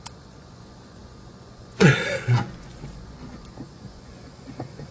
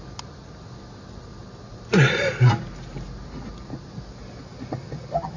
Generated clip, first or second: first